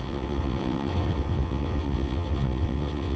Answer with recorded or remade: remade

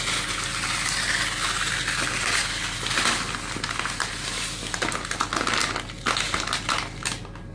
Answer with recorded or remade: recorded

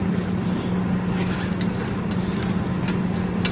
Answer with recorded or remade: recorded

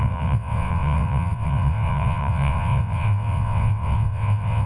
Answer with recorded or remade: remade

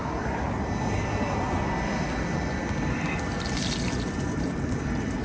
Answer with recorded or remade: recorded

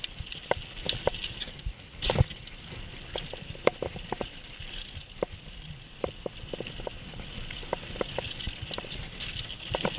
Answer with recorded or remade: recorded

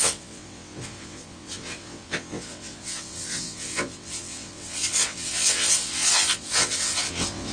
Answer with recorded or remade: remade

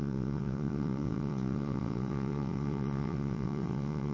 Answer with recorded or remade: remade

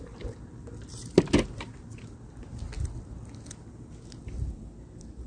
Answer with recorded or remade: recorded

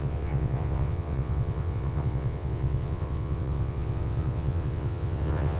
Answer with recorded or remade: remade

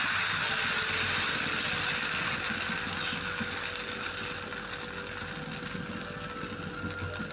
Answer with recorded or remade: recorded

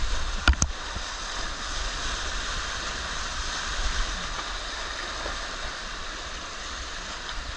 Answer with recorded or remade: recorded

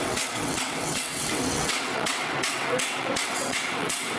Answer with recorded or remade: remade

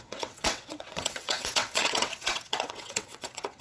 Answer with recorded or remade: remade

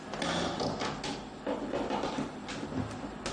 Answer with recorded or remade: recorded